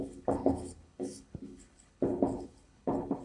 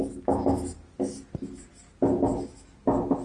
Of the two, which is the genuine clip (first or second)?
second